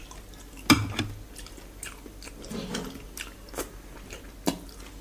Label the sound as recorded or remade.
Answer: recorded